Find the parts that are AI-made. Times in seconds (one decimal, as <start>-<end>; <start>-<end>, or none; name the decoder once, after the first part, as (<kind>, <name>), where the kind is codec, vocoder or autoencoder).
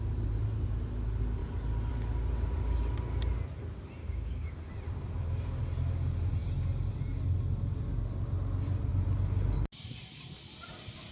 4.0-4.7 (codec, DAC)